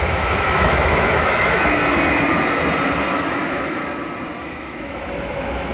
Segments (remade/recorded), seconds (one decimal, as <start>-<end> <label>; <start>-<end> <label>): 0.0-1.8 remade; 1.8-3.1 recorded; 3.1-3.8 remade; 3.8-4.4 recorded; 4.4-5.7 remade